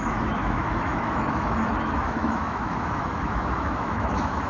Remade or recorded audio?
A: remade